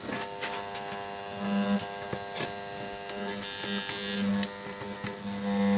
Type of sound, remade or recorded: recorded